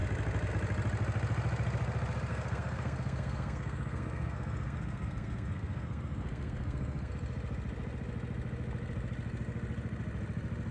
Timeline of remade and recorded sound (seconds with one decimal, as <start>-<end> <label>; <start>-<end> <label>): 0.0-2.3 recorded; 2.3-7.1 remade; 7.1-10.7 recorded